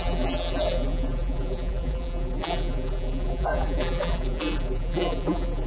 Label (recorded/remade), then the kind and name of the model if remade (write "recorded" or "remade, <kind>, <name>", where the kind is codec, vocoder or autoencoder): remade, vocoder, BigVGAN v2